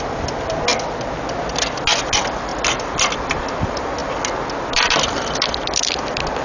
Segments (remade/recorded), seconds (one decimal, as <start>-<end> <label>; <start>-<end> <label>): 0.0-6.4 recorded